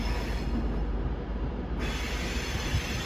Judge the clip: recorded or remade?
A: recorded